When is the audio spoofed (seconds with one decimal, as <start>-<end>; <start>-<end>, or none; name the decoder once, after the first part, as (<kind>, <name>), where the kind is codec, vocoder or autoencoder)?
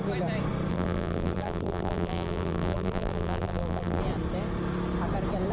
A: 0.7-4.0 (vocoder, BigVGAN v2)